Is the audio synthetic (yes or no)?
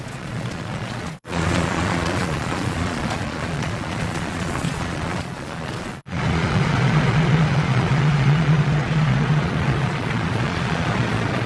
yes